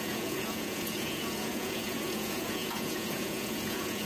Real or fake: fake